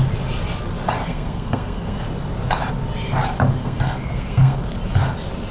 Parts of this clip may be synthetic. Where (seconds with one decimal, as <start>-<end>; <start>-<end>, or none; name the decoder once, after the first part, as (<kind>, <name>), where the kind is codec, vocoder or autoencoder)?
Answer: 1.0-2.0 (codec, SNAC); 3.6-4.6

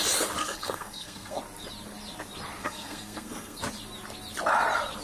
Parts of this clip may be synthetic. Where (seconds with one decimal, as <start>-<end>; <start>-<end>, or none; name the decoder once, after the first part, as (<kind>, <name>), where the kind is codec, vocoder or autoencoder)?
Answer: 0.4-1.4 (codec, SNAC); 2.6-3.6

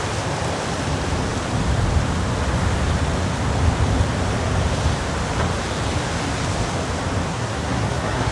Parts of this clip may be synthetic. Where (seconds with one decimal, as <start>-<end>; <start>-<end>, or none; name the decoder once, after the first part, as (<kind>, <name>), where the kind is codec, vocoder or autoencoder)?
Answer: 7.3-8.3 (codec, SNAC)